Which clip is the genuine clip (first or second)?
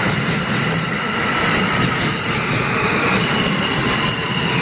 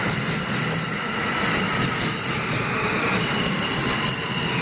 second